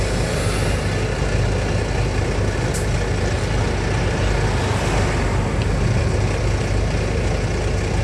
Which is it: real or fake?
real